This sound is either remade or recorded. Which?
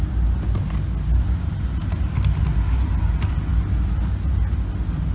recorded